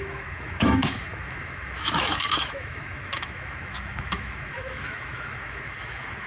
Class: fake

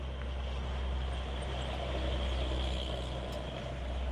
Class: real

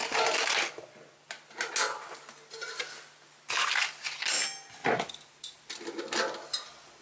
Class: real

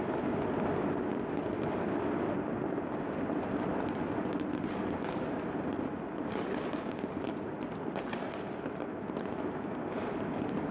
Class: real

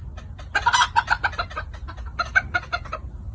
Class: real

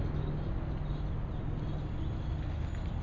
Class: real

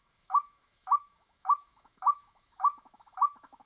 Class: fake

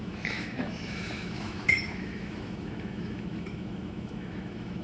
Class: fake